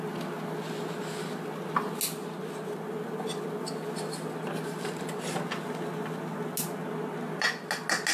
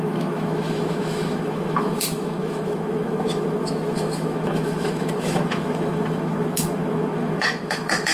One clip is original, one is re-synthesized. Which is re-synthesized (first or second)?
second